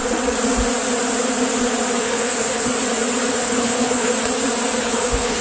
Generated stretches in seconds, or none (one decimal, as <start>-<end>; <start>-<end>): 2.0-2.7; 3.3-4.1; 4.8-5.4